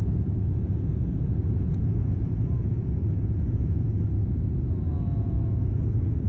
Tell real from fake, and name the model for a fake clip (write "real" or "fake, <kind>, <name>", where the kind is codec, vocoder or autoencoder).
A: fake, vocoder, Vocos